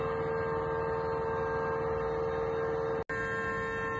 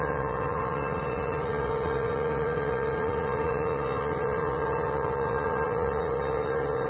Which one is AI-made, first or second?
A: second